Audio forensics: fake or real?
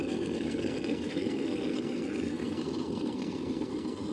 fake